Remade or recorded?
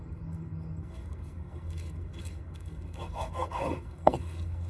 remade